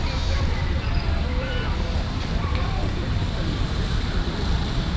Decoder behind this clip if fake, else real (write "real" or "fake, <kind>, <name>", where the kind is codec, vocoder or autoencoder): fake, vocoder, BigVGAN v2